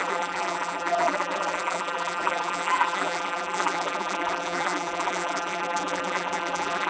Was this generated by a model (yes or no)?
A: yes